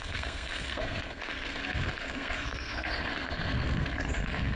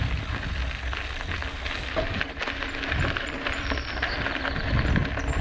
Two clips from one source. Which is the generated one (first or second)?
first